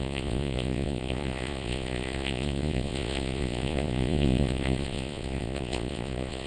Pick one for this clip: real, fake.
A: fake